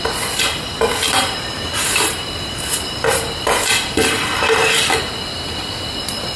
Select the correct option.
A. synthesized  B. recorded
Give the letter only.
B